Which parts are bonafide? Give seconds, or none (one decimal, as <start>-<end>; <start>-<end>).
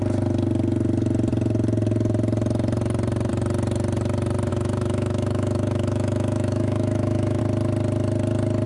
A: 0.0-4.5; 7.4-8.7